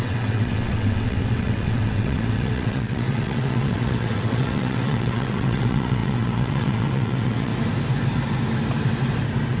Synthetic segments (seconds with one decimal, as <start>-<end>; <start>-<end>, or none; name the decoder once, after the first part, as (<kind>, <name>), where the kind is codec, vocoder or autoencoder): 0.0-7.5 (vocoder, WaveNeXt)